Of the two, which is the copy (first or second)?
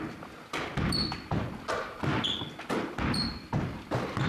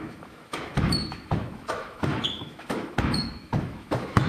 second